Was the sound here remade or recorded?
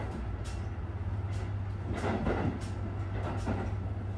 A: recorded